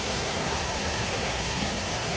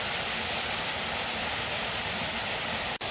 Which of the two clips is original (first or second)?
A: second